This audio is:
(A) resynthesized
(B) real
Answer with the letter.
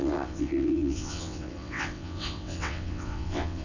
A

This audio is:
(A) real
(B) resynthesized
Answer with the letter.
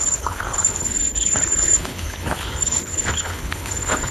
B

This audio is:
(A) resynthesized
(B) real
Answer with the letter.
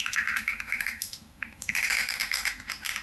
A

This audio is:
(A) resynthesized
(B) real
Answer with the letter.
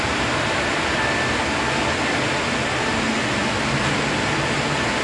B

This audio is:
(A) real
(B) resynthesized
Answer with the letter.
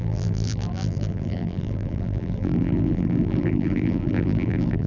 B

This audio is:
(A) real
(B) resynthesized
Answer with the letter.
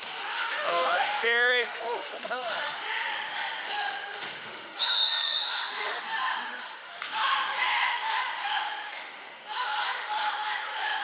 B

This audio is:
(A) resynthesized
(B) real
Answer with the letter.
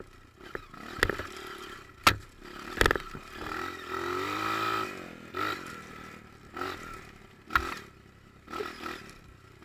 B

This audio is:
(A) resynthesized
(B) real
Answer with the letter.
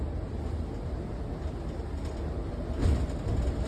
B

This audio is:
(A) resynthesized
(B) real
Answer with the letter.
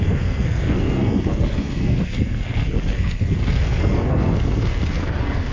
A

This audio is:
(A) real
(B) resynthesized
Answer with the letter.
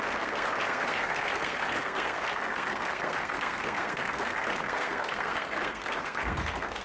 B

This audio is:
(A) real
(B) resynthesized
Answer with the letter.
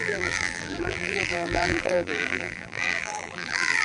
B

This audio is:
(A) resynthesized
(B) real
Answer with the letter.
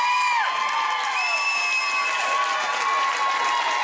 B